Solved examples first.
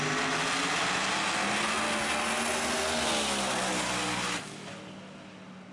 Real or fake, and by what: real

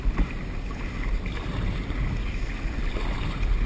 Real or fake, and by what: real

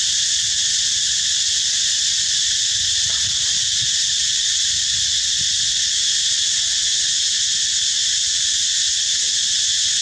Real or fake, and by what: real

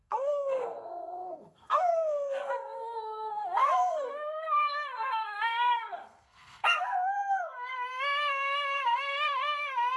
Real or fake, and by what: fake, codec, SNAC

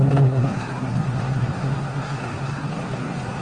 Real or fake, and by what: fake, codec, SNAC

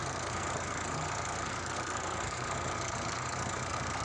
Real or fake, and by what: fake, codec, SNAC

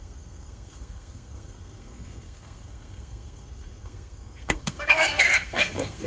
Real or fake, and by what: fake, codec, SNAC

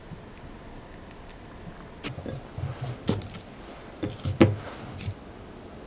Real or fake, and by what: real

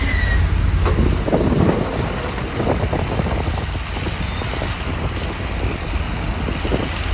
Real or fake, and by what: real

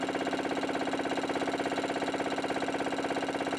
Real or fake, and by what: real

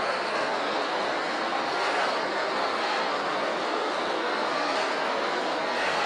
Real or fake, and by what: fake, codec, SNAC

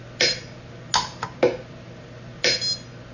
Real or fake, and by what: real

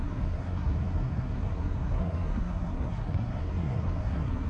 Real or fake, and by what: fake, codec, SNAC